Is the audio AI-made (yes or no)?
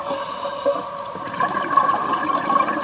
no